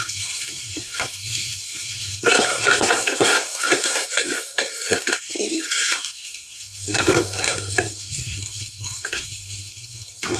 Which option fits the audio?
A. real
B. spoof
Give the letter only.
B